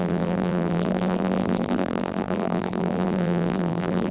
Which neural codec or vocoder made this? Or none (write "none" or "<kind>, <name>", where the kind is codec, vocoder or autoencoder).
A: vocoder, BigVGAN v2